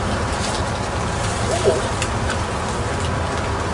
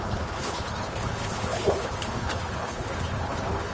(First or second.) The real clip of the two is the first